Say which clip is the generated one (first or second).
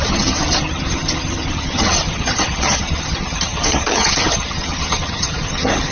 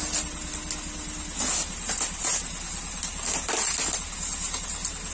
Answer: first